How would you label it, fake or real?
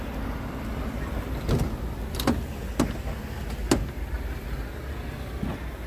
real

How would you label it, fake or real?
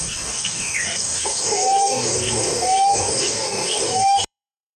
fake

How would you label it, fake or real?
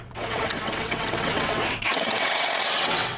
fake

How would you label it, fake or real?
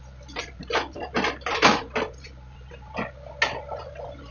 real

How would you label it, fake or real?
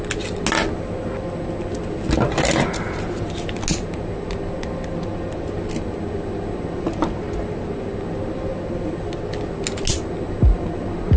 real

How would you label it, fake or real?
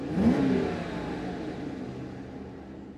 real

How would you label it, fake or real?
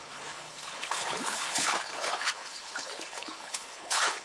fake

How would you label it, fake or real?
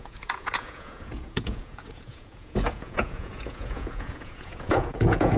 fake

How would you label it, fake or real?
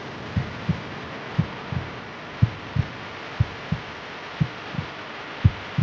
real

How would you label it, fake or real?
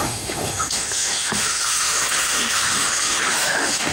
fake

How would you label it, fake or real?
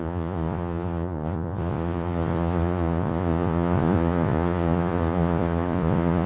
fake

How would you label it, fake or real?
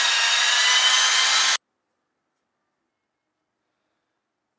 real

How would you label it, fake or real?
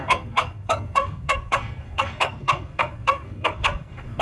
fake